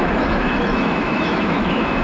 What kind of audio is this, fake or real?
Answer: fake